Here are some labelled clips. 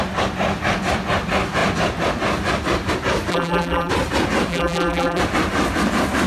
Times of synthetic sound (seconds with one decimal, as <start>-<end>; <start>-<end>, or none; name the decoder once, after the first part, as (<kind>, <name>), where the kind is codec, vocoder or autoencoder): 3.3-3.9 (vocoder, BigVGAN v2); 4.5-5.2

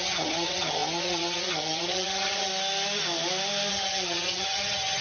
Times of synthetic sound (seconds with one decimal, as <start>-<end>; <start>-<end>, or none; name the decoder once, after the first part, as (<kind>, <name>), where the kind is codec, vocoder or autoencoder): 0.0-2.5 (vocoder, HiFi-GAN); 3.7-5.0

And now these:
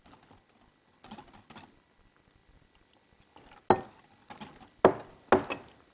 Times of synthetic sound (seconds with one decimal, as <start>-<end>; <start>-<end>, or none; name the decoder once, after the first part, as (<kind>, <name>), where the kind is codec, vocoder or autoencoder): none